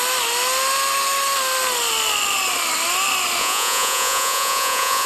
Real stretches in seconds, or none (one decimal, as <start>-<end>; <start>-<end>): 0.0-3.4